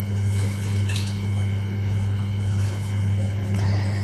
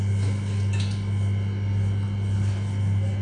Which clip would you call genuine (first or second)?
second